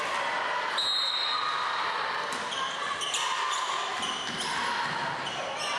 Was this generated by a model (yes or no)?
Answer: no